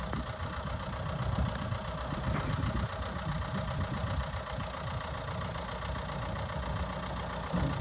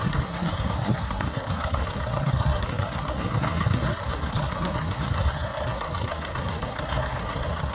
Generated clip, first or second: second